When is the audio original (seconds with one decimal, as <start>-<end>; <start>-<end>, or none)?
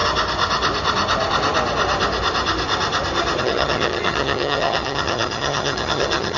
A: 0.0-3.4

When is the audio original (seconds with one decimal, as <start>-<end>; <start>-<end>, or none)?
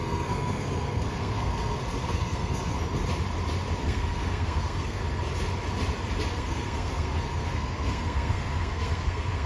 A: 2.7-3.8; 5.0-6.3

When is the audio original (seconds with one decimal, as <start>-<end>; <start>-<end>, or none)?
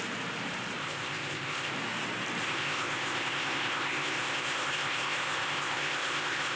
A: 0.0-0.8; 1.7-2.4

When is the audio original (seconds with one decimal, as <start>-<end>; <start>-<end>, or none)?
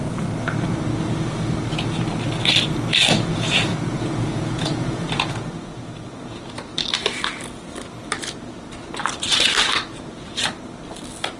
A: 0.0-3.3; 6.4-11.4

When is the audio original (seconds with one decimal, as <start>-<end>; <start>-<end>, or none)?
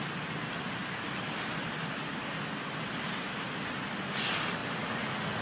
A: 0.0-4.6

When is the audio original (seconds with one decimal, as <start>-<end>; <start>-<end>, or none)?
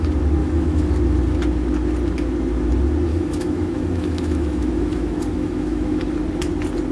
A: 0.0-0.4; 0.9-3.1; 6.0-6.9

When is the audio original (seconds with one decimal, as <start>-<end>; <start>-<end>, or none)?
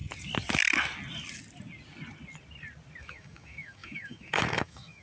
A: 0.0-3.0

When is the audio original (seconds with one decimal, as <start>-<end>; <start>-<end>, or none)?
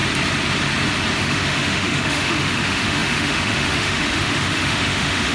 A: 0.0-1.2